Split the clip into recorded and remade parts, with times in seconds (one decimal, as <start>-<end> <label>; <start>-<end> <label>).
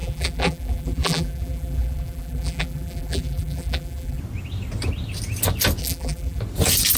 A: 0.0-4.2 remade; 4.2-5.8 recorded; 5.8-6.4 remade; 6.4-7.0 recorded